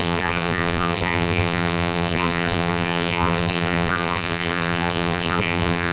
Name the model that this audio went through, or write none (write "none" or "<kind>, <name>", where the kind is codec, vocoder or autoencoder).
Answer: vocoder, BigVGAN v2